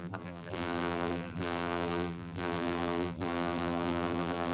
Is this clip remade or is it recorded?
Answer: remade